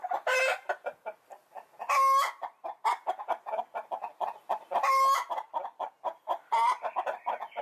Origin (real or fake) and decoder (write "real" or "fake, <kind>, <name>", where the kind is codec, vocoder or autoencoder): real